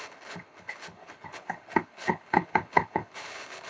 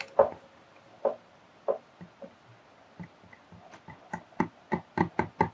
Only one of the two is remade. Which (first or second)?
first